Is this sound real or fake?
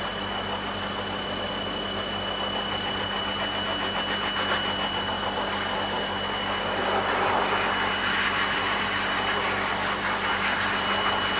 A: real